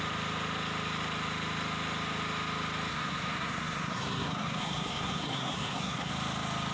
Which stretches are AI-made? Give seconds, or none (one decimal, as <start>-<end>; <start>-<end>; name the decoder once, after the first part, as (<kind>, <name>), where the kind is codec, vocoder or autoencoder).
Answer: 2.9-6.1 (codec, SNAC)